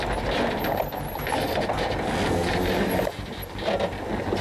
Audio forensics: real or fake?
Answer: real